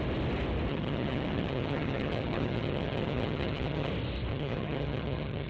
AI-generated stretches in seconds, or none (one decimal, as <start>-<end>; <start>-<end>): 0.7-3.9; 4.3-5.5